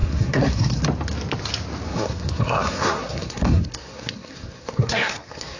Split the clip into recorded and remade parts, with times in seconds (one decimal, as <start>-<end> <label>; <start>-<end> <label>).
0.0-0.8 remade; 0.8-1.9 recorded; 1.9-5.6 remade